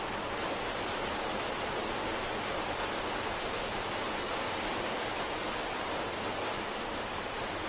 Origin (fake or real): real